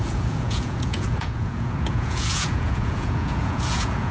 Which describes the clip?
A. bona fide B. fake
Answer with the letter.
B